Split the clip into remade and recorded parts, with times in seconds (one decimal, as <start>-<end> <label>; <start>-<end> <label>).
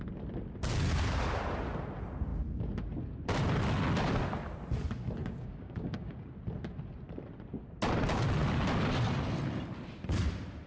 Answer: 0.0-5.2 recorded; 5.2-6.3 remade; 6.3-10.7 recorded